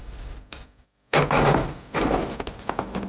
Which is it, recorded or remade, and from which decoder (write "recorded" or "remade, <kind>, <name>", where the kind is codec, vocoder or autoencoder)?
recorded